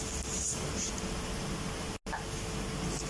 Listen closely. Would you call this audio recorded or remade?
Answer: recorded